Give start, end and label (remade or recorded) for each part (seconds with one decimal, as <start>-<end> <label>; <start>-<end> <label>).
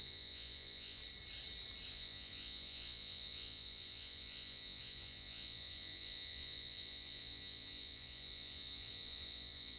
0.0-1.0 remade; 1.0-1.9 recorded; 1.9-9.8 remade